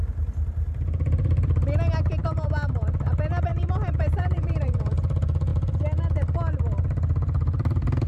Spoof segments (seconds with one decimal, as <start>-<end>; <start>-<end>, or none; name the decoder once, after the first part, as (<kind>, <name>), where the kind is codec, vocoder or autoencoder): 2.2-3.1 (vocoder, BigVGAN v2); 3.5-4.9